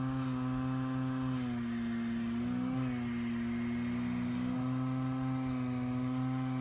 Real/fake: real